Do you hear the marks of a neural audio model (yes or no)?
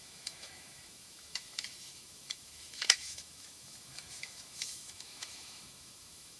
yes